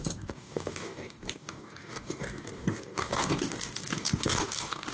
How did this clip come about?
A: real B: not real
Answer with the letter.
B